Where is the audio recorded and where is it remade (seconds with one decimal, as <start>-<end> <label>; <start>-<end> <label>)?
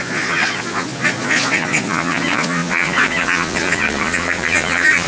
0.0-5.1 remade